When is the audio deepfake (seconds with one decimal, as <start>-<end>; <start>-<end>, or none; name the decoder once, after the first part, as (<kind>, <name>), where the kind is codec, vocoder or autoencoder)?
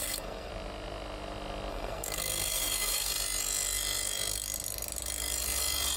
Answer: 0.0-0.5 (codec, SNAC); 1.7-3.1